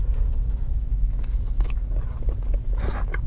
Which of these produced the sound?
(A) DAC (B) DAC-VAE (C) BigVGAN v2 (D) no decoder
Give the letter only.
D